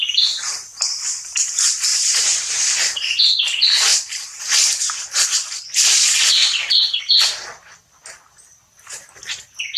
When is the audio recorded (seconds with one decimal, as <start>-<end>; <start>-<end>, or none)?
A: 0.0-1.9; 2.5-3.9; 4.4-9.8

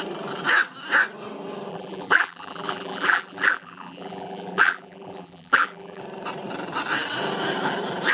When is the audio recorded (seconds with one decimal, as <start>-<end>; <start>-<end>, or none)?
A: 0.0-1.7; 6.0-8.1

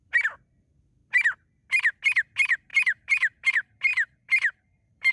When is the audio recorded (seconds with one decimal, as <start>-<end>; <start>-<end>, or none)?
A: 0.0-2.7; 3.5-3.9